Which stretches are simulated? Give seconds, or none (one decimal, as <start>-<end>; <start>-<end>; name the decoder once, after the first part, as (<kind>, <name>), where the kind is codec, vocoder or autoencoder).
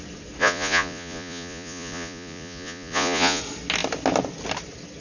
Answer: 0.4-3.4 (vocoder, Vocos)